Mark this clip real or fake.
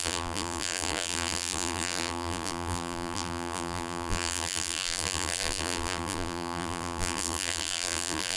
fake